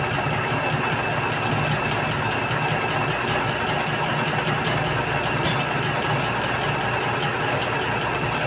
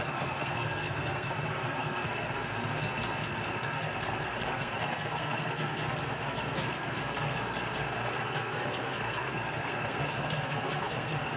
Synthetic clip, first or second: second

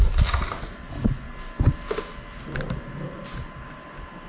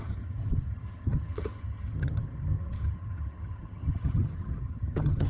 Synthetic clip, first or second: second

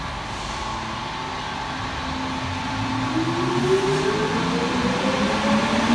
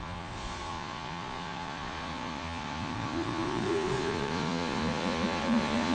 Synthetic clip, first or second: second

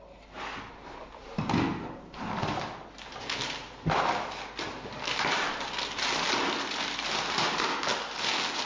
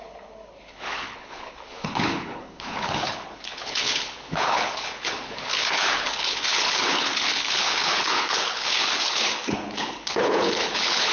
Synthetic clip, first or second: second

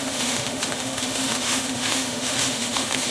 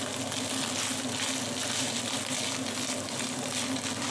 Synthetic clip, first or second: first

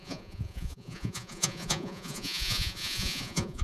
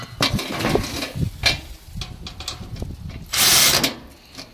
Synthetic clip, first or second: first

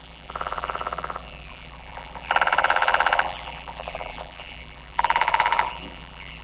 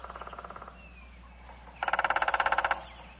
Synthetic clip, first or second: first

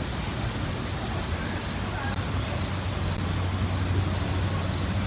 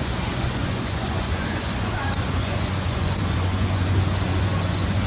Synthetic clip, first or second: second